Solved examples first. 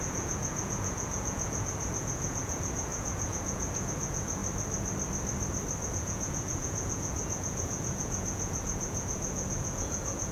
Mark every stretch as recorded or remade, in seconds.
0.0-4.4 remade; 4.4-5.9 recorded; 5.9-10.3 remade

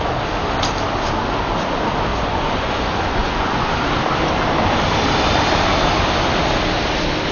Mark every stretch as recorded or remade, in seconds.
0.0-2.1 recorded; 2.1-3.7 remade; 3.7-7.3 recorded

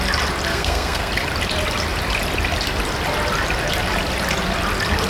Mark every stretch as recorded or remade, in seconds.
0.0-0.5 recorded; 0.5-1.1 remade; 1.1-5.1 recorded

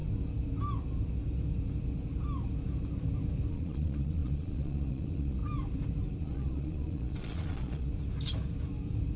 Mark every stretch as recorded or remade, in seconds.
0.0-3.5 recorded; 3.5-5.4 remade; 5.4-6.2 recorded; 6.2-7.9 remade; 7.9-9.2 recorded

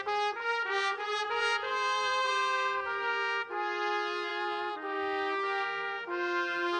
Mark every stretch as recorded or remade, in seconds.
0.0-1.1 recorded; 1.1-2.3 remade; 2.3-6.8 recorded

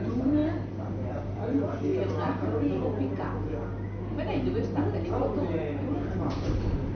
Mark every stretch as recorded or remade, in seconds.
0.0-0.4 remade; 0.4-1.1 recorded; 1.1-1.9 remade; 1.9-6.1 recorded; 6.1-7.0 remade